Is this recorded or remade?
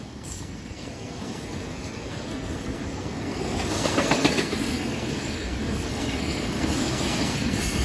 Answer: remade